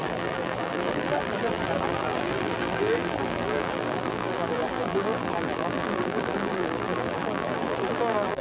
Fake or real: fake